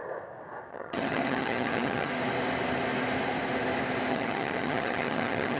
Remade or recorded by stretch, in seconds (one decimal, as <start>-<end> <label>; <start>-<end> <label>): 0.0-0.7 recorded; 0.7-2.1 remade; 2.1-4.1 recorded; 4.1-5.6 remade